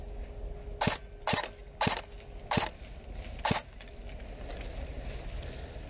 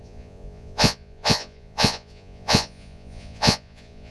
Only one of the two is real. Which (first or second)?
first